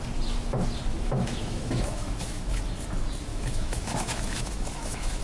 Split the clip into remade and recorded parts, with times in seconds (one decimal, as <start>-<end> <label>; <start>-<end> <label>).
0.0-0.9 recorded; 0.9-2.6 remade; 2.6-3.3 recorded; 3.3-5.2 remade